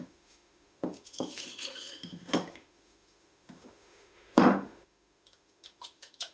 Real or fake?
fake